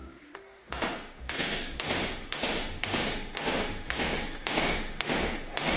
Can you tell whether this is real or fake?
fake